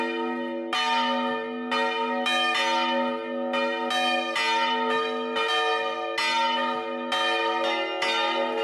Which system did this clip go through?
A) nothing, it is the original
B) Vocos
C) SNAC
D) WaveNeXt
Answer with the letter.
A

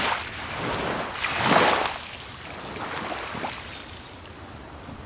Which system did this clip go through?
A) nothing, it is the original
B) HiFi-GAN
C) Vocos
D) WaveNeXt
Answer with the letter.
A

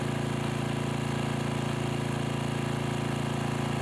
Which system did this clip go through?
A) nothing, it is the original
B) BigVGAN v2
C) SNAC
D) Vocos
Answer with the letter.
A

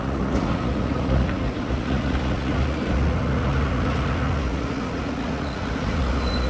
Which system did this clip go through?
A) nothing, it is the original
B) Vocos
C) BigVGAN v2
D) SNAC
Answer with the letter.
B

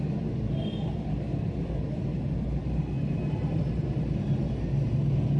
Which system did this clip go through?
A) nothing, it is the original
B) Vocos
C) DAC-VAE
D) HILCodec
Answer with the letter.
A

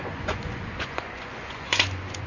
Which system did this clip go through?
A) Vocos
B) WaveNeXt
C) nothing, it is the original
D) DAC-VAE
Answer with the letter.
A